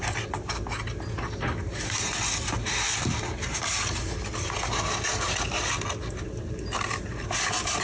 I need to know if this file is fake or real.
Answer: real